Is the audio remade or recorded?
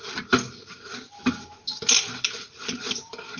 recorded